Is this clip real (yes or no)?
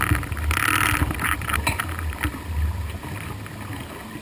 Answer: yes